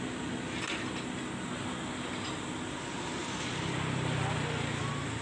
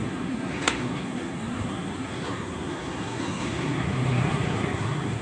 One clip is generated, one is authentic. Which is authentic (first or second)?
first